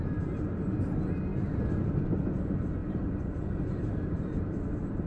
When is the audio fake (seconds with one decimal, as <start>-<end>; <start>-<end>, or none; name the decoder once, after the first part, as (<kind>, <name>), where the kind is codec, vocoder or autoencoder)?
2.8-4.4 (vocoder, BigVGAN v2)